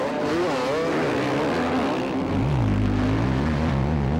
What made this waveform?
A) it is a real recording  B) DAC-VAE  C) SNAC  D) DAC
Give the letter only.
A